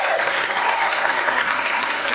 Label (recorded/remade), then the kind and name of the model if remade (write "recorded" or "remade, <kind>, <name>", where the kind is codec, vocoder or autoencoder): remade, codec, SNAC